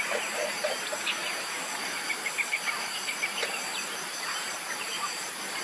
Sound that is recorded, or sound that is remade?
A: remade